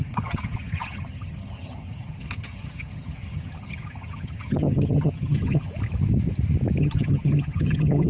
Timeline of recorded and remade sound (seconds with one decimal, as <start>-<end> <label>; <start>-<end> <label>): 0.0-5.7 remade; 5.7-6.8 recorded; 6.8-8.1 remade